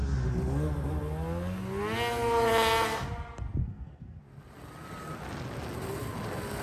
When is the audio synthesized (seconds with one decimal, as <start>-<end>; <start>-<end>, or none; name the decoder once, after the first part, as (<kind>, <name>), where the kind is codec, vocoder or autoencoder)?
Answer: 3.6-4.2 (codec, SNAC)